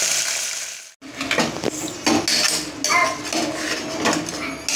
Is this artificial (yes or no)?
no